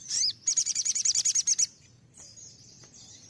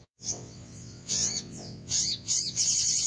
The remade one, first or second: second